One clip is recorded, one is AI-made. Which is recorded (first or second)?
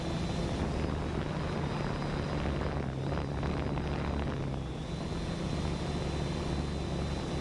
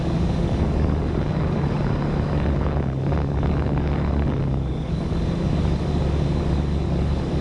first